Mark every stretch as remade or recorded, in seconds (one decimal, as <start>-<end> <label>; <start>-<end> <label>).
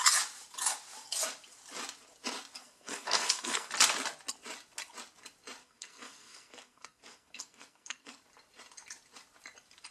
0.0-2.6 recorded; 2.6-3.7 remade; 3.7-5.6 recorded; 5.6-8.2 remade; 8.2-9.9 recorded